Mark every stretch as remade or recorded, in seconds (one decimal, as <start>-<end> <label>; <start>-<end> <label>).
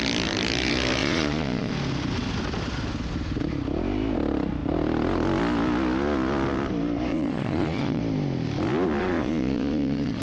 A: 0.0-1.0 recorded; 1.0-1.7 remade; 1.7-7.1 recorded; 7.1-8.0 remade; 8.0-9.0 recorded; 9.0-10.2 remade